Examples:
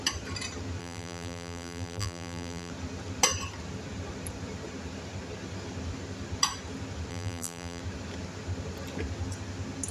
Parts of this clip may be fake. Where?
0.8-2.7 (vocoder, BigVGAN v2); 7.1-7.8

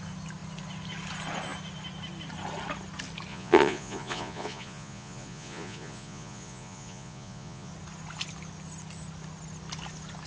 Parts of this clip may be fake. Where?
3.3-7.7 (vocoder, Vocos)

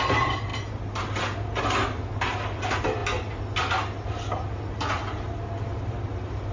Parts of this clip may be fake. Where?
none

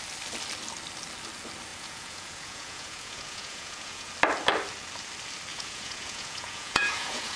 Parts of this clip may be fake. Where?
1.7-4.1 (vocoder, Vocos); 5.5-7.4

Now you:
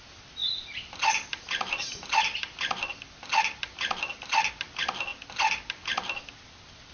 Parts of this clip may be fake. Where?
0.4-4.5 (vocoder, BigVGAN v2)

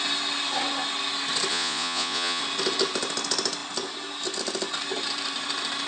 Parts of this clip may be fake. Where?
1.5-2.4 (vocoder, Vocos)

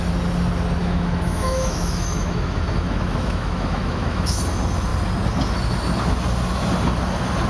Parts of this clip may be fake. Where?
0.8-4.4 (autoencoder, DAC-VAE)

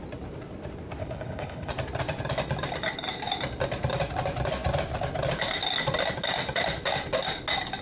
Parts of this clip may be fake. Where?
1.0-1.7 (codec, HILCodec)